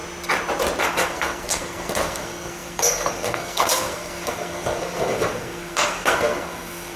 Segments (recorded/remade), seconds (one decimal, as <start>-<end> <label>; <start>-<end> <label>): 0.0-0.8 recorded; 0.8-7.0 remade